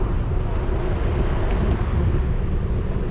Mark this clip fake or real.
real